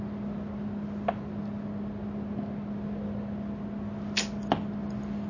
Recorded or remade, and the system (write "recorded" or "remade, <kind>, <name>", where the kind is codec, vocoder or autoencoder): recorded